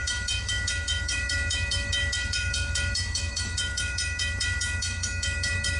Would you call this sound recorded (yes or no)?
no